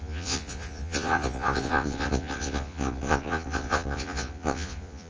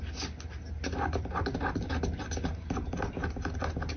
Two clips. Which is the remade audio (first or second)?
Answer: first